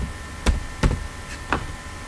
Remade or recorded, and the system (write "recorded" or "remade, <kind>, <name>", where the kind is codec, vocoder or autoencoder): recorded